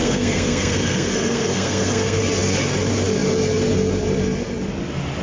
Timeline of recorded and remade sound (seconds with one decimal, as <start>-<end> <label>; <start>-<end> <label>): 0.0-2.2 remade; 2.2-5.2 recorded